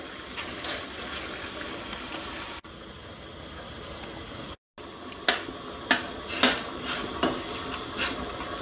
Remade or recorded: recorded